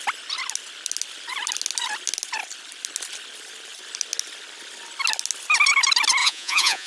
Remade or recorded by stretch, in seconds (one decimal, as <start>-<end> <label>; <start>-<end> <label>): 0.0-6.2 recorded; 6.2-6.9 remade